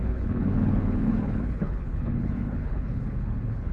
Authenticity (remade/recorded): remade